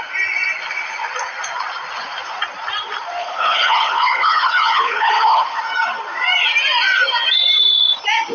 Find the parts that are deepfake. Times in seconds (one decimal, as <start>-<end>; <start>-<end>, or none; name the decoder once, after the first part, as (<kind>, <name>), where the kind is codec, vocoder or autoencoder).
3.2-5.6 (codec, HILCodec)